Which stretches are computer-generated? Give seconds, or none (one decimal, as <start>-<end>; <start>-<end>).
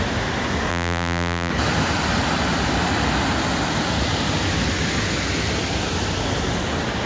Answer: 0.7-1.5